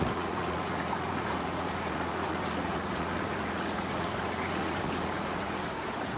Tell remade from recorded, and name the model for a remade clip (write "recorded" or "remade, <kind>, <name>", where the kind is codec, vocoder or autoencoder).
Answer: remade, vocoder, Vocos